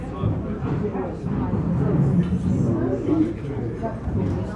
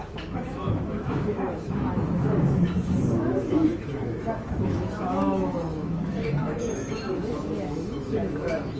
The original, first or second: first